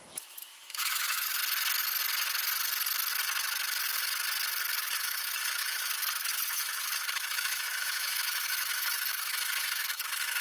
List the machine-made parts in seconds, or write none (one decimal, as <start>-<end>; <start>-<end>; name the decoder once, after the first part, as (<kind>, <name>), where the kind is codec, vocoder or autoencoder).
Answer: 0.0-1.4 (autoencoder, DAC-VAE); 4.8-10.4